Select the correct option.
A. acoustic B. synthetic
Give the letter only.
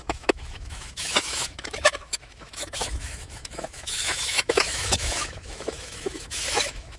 B